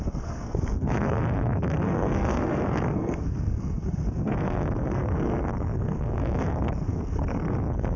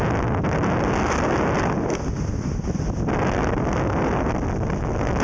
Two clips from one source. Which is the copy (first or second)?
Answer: first